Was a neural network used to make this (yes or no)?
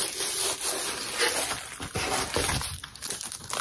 no